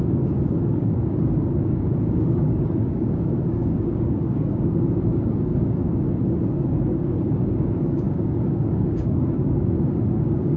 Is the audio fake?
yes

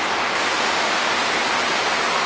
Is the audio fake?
no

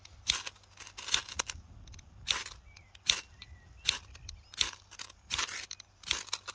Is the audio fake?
no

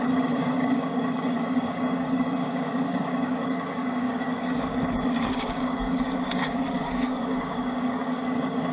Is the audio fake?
yes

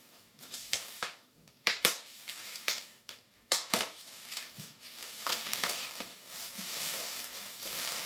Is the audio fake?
yes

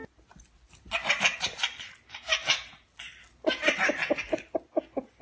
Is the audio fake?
no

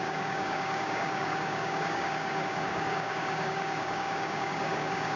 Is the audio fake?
yes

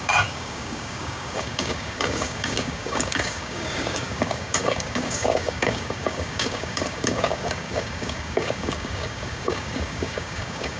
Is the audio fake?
yes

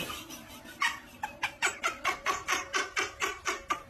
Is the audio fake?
no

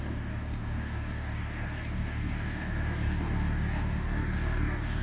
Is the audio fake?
yes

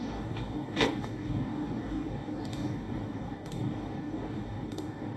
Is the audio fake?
yes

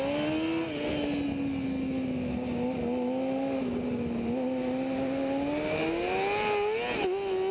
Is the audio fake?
no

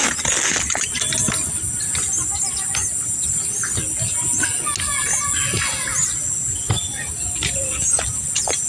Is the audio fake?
no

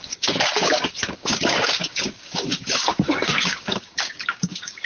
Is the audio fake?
yes